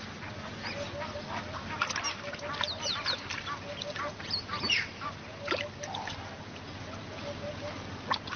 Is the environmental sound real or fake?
real